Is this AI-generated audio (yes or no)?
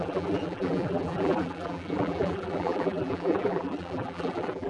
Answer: yes